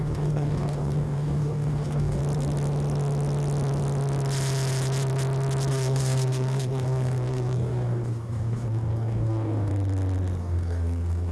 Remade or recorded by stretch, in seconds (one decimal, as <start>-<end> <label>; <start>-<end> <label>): 0.0-2.2 remade; 2.2-5.7 recorded; 5.7-9.7 remade; 9.7-10.4 recorded; 10.4-11.3 remade

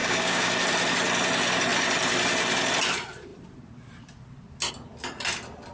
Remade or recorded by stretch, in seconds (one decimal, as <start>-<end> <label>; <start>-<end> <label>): 0.0-0.5 remade; 0.5-5.7 recorded

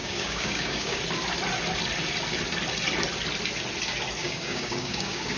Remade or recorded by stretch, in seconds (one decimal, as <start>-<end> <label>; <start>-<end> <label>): 0.0-1.0 remade; 1.0-4.2 recorded; 4.2-5.4 remade